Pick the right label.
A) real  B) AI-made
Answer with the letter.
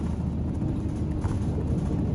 A